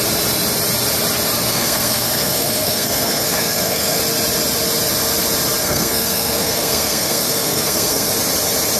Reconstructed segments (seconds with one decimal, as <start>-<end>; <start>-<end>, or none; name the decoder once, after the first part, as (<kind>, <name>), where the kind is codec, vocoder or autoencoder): 1.5-4.0 (codec, SNAC); 5.6-8.1